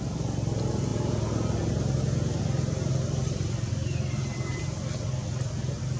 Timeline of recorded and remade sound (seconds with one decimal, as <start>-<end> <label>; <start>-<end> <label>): 0.0-6.0 recorded

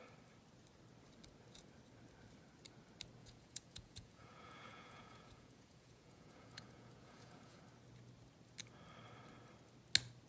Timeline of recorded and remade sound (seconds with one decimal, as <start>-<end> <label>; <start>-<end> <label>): 0.0-3.2 recorded; 3.2-7.6 remade; 7.6-10.3 recorded

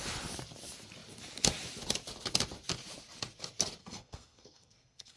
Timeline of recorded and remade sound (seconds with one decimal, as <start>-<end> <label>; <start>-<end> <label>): 0.0-3.8 recorded; 3.8-5.2 remade

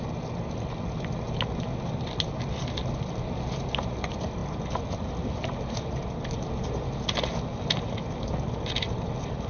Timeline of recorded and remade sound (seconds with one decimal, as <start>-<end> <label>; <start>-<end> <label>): 0.0-9.5 recorded